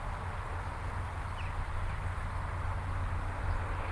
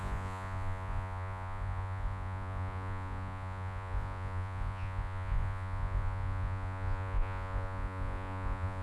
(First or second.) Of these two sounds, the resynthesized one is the second